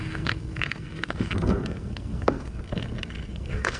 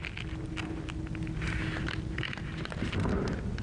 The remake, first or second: first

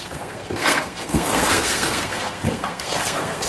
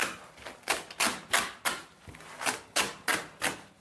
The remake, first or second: first